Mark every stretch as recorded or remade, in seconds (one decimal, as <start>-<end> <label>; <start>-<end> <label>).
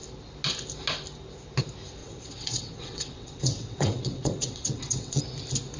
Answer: 0.0-2.0 recorded; 2.0-5.2 remade; 5.2-5.8 recorded